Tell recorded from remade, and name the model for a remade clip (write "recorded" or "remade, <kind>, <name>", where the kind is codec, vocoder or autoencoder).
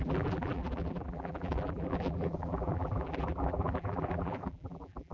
remade, vocoder, BigVGAN v2